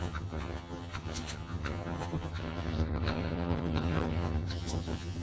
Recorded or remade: remade